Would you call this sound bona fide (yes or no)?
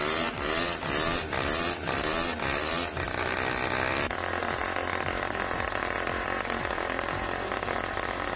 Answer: yes